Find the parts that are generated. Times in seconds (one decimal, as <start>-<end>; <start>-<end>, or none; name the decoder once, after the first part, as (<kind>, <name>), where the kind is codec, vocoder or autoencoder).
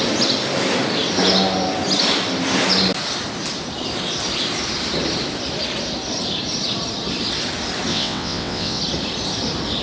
7.9-8.8 (vocoder, WaveNeXt)